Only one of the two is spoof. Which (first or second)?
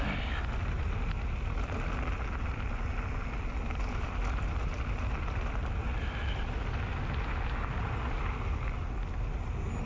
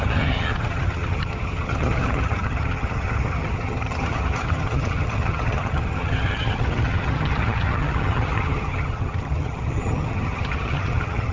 second